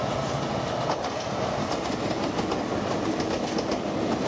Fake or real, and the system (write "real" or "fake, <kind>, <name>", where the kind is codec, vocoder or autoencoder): real